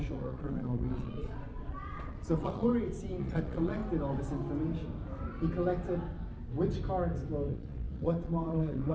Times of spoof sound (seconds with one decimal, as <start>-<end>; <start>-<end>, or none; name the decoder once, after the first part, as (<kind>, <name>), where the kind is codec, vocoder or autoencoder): 0.0-2.7 (vocoder, Vocos); 3.2-3.8; 7.5-8.9